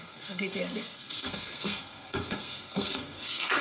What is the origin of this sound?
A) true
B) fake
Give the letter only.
B